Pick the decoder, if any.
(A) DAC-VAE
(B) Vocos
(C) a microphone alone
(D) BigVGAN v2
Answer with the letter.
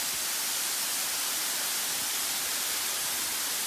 C